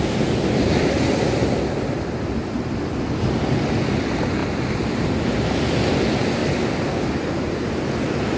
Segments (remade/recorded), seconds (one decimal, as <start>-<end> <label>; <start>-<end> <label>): 0.0-8.4 recorded